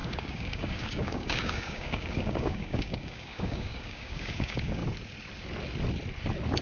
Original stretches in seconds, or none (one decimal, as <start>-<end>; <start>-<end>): 4.8-6.6